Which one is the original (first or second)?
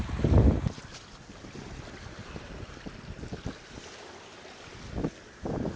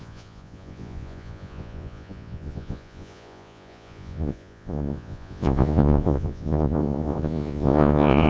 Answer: first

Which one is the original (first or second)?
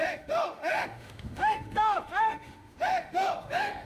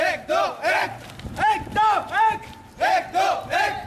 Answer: second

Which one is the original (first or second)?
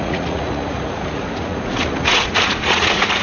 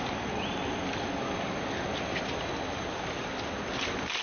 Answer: second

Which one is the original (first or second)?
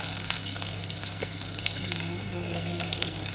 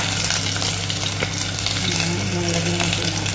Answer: second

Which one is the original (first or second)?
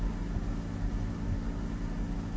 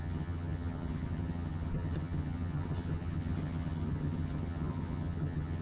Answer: first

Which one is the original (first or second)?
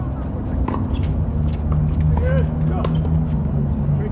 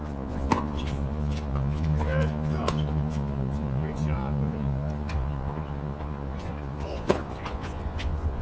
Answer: first